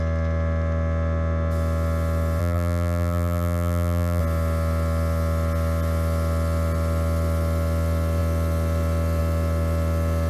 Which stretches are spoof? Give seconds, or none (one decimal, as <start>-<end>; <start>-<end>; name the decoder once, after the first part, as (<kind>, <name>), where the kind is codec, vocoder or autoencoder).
2.4-4.2 (vocoder, BigVGAN v2)